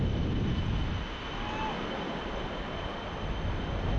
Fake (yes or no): no